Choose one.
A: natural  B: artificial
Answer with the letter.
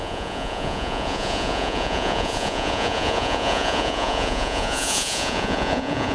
B